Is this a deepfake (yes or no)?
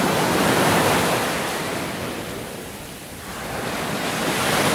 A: no